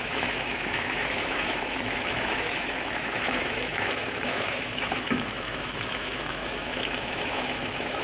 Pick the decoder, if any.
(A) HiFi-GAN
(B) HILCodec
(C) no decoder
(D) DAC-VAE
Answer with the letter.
D